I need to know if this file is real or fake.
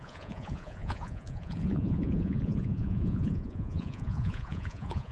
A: fake